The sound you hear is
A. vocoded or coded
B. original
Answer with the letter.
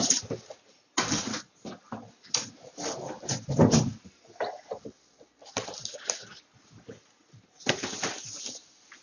B